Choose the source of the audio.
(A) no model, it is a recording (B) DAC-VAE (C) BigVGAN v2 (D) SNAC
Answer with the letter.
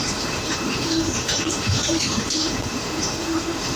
B